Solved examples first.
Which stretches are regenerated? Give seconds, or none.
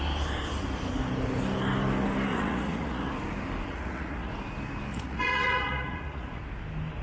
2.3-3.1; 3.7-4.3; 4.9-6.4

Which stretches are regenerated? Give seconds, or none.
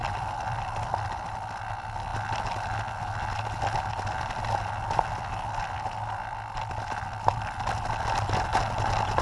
0.0-1.6